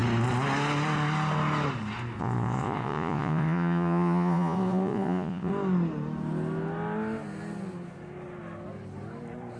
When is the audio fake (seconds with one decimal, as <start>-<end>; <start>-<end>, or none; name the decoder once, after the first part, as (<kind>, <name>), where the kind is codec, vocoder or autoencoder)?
2.2-5.5 (vocoder, Vocos)